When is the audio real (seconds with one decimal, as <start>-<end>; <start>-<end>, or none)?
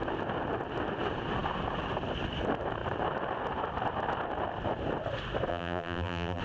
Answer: 0.0-5.5